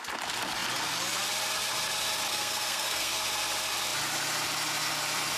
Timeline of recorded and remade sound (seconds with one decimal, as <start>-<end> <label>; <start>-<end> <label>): 0.0-2.3 recorded; 2.3-3.1 remade; 3.1-5.4 recorded